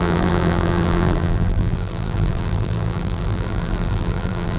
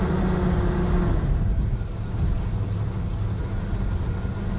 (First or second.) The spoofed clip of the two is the first